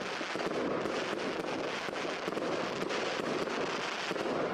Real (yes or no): yes